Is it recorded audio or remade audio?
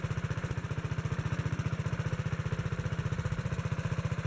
remade